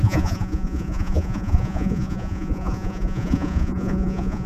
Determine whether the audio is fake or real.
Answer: fake